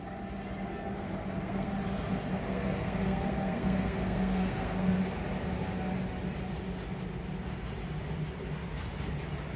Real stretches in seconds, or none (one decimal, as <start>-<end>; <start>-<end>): 0.0-0.7; 1.7-2.3; 5.0-9.6